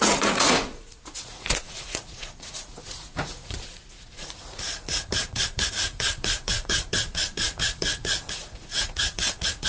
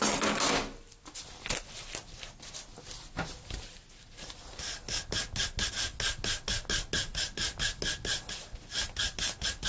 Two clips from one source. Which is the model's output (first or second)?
first